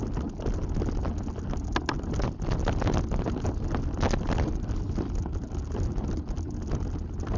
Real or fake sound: real